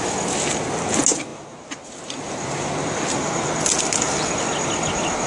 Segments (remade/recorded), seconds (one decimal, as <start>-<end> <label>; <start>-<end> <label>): 0.0-5.3 recorded